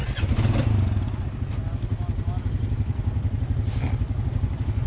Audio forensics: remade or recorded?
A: recorded